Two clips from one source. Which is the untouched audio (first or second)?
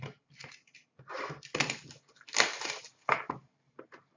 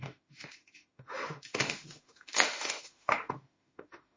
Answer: first